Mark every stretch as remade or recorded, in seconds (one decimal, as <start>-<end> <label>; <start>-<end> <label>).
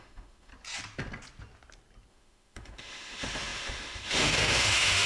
0.0-0.5 remade; 0.5-2.1 recorded; 2.1-5.1 remade